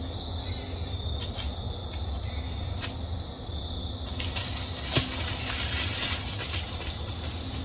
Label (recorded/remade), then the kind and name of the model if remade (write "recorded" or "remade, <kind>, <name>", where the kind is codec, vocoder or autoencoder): recorded